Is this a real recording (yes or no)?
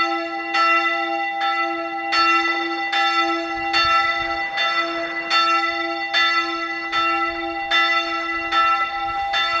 yes